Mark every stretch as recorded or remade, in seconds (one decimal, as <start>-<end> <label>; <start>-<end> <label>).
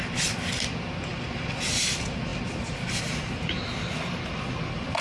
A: 0.0-5.0 recorded